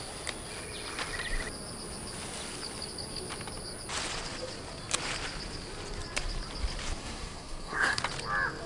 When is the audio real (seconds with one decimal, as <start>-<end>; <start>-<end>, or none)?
0.0-7.0; 8.0-8.7